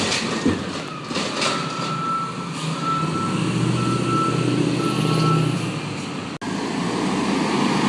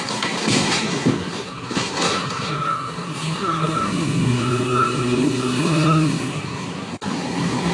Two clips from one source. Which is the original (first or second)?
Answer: first